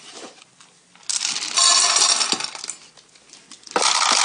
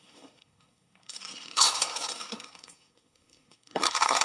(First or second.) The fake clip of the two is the second